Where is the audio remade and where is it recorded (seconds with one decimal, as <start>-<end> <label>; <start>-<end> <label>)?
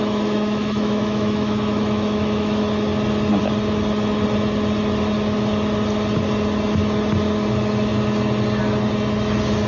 0.0-2.6 remade; 2.6-9.7 recorded